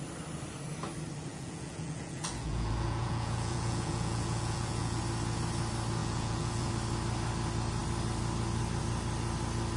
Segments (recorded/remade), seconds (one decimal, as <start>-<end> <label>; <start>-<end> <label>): 0.0-1.3 recorded; 1.3-5.0 remade; 5.0-6.0 recorded; 6.0-6.7 remade; 6.7-9.8 recorded